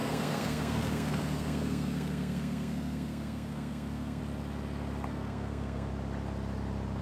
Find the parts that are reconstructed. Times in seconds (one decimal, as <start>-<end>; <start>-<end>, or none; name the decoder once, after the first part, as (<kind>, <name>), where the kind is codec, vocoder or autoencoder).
0.0-4.2 (codec, SNAC); 5.1-5.9